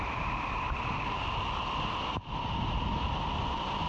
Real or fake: real